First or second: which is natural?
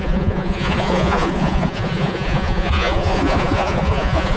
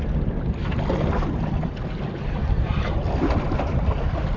second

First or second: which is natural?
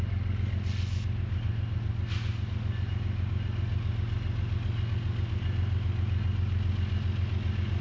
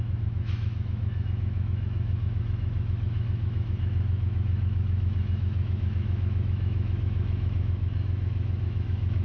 first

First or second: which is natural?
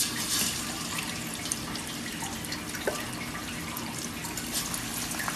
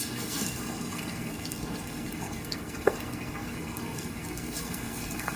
first